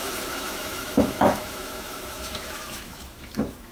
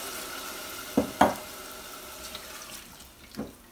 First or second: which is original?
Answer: second